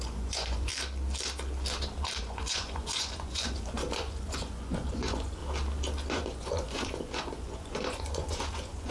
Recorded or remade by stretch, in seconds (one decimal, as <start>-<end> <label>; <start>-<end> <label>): 0.0-0.7 remade; 0.7-2.2 recorded; 2.2-5.4 remade; 5.4-6.1 recorded; 6.1-8.9 remade